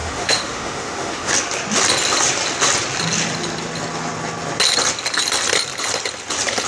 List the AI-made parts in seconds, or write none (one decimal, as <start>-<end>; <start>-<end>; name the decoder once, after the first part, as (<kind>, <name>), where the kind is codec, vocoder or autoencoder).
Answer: 0.0-1.3 (autoencoder, DAC-VAE)